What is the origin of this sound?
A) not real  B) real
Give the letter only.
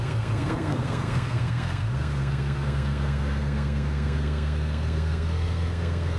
A